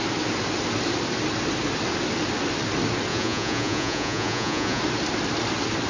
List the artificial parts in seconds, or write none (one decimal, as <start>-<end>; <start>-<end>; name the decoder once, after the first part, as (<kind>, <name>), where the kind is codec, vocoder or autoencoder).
3.1-4.8 (vocoder, Vocos)